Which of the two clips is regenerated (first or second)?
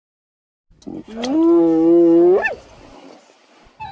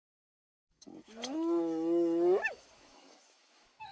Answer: second